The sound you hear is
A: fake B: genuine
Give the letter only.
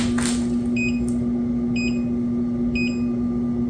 B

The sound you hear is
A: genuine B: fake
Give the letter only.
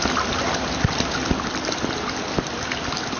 A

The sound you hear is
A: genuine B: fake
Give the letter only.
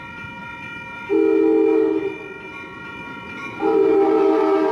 A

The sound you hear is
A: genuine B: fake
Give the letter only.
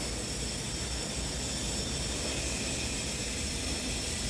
A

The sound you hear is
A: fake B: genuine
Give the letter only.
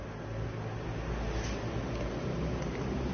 B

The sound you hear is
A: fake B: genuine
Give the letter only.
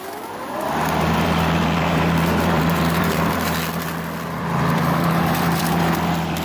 A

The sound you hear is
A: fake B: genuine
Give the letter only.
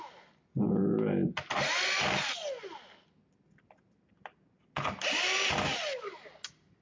B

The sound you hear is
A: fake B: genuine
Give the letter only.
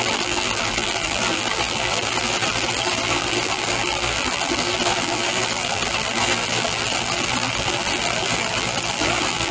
A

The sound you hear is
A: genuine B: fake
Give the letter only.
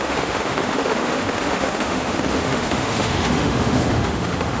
B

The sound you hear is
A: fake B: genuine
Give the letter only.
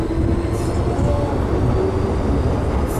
B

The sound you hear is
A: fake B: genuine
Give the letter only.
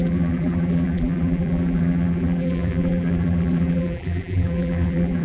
A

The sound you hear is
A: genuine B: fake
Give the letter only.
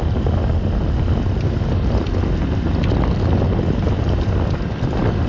A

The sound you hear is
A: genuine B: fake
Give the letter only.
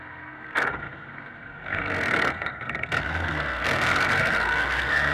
B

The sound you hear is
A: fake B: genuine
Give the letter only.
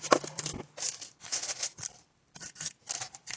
B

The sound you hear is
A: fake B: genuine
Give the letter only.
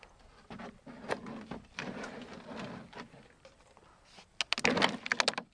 B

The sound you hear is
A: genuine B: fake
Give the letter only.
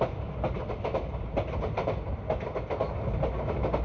A